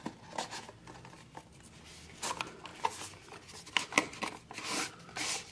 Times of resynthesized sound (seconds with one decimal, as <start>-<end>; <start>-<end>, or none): none